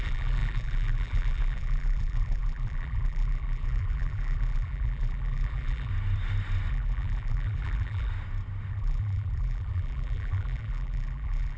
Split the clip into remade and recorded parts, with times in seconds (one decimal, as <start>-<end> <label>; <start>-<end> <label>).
0.0-5.9 remade; 5.9-6.7 recorded; 6.7-8.1 remade; 8.1-8.7 recorded; 8.7-11.6 remade